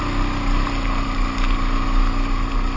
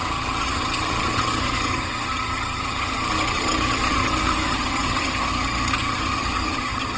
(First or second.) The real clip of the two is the first